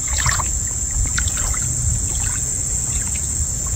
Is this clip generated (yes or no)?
yes